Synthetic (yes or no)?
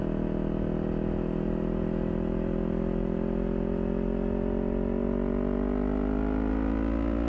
no